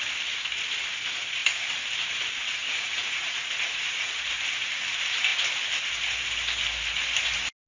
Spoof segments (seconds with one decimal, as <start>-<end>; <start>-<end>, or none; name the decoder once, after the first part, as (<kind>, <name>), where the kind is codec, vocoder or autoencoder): 2.6-4.4 (vocoder, Vocos)

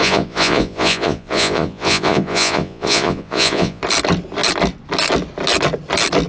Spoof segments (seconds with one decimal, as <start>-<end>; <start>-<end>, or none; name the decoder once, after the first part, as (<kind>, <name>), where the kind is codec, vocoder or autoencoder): 0.0-3.8 (vocoder, Vocos)

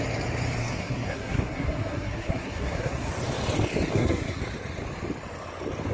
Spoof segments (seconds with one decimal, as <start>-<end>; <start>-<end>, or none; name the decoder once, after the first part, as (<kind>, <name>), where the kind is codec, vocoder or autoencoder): 0.6-3.1 (codec, SNAC); 3.9-4.4

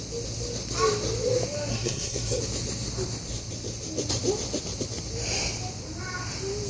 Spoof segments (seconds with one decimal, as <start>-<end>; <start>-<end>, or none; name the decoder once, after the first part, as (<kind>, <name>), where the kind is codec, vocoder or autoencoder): 1.7-2.4 (codec, SNAC)

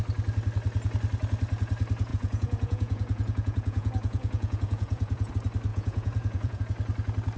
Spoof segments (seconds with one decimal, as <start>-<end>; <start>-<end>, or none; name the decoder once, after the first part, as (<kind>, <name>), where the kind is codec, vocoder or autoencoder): 2.1-5.3 (vocoder, Vocos); 5.7-6.6

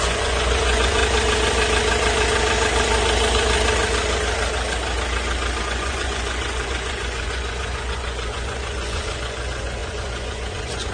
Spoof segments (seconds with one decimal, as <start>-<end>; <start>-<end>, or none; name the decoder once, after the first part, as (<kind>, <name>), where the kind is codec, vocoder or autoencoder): 0.0-1.0 (vocoder, Vocos); 5.6-10.9

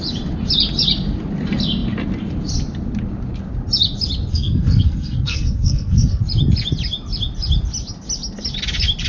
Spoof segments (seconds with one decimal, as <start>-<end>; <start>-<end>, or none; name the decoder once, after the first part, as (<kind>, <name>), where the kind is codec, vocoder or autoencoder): 4.3-6.2 (codec, SNAC)